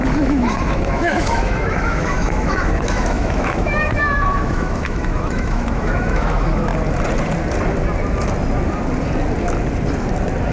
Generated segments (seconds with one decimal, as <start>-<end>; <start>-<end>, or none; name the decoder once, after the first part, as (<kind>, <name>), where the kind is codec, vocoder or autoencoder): 0.0-6.7 (autoencoder, DAC-VAE)

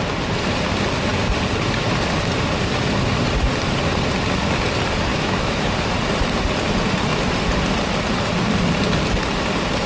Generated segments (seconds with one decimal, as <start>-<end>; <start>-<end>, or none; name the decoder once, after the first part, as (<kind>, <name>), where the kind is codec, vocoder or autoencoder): 5.1-5.7 (autoencoder, DAC-VAE)

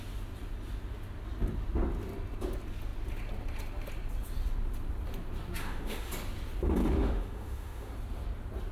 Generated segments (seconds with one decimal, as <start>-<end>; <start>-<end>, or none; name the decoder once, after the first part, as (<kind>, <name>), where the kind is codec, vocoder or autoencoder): 5.6-6.1 (autoencoder, DAC-VAE); 6.8-7.9

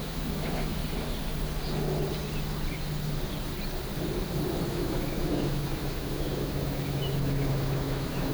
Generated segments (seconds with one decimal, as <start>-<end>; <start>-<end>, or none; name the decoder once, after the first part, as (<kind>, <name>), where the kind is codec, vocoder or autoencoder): 0.0-0.8 (autoencoder, DAC-VAE); 4.7-8.3

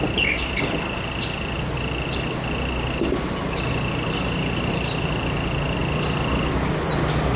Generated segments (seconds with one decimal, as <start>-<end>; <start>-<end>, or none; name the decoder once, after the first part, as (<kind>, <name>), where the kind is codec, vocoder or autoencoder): none

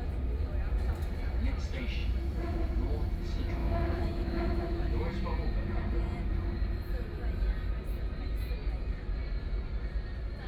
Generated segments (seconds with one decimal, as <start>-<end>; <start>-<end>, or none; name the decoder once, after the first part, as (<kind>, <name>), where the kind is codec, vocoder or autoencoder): 3.6-5.0 (autoencoder, DAC-VAE)